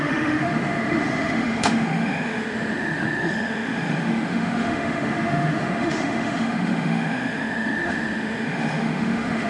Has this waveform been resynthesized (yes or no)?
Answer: yes